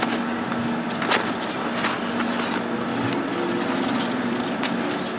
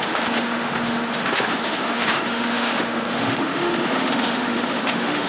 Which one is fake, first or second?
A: second